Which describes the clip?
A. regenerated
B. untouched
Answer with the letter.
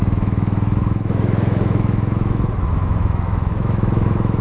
A